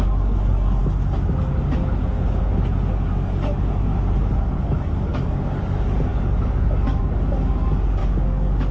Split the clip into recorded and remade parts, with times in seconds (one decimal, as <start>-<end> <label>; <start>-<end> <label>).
0.0-0.8 remade; 0.8-2.9 recorded; 2.9-3.9 remade; 3.9-4.4 recorded; 4.4-8.7 remade